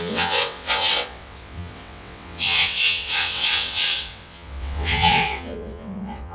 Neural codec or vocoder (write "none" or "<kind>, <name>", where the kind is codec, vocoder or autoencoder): vocoder, WaveNeXt